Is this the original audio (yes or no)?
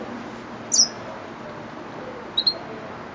yes